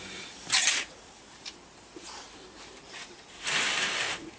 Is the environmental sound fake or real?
fake